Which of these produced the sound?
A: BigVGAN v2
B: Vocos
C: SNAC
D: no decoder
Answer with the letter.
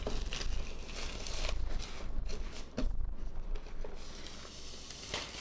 D